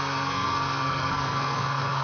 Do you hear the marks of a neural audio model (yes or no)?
yes